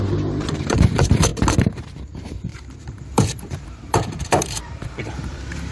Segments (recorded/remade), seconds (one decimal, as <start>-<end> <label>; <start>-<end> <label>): 0.0-1.3 remade; 1.3-1.8 recorded; 1.8-5.7 remade